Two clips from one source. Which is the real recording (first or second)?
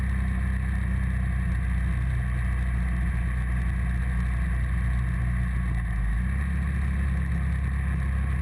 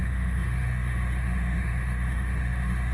first